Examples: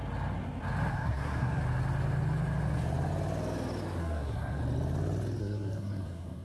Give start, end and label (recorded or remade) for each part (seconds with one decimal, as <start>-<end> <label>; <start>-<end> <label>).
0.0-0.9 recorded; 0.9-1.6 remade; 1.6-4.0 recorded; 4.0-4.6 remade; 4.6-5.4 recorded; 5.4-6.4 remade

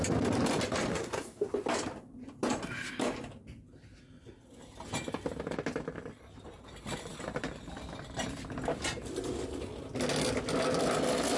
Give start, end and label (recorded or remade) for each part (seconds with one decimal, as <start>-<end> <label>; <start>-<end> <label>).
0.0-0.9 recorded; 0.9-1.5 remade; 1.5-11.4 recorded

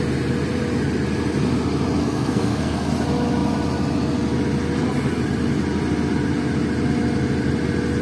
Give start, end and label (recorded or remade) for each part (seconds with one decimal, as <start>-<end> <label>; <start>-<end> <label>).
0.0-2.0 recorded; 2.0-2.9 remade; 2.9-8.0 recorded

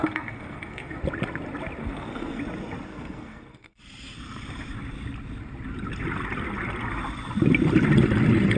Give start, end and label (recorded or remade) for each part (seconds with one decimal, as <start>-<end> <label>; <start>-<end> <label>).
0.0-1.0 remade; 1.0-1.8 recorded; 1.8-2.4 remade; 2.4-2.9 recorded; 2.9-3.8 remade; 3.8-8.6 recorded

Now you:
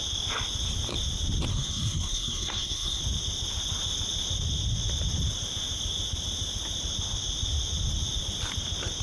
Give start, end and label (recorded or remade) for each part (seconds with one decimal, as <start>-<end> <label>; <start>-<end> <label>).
0.0-1.5 recorded; 1.5-3.0 remade; 3.0-9.0 recorded